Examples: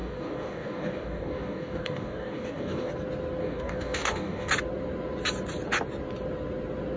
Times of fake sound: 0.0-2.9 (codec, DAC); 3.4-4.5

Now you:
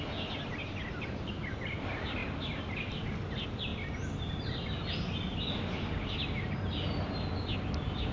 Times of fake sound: none